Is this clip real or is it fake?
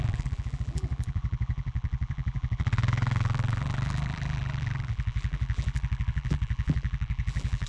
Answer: fake